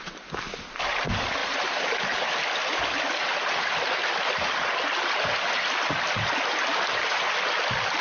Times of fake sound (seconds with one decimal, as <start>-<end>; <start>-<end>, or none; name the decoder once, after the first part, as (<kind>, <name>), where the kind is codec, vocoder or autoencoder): none